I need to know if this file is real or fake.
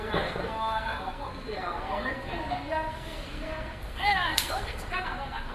fake